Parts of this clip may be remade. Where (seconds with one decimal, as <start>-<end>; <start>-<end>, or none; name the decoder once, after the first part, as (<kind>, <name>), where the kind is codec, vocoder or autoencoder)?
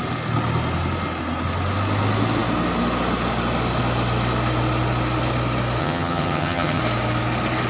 5.8-6.8 (vocoder, HiFi-GAN)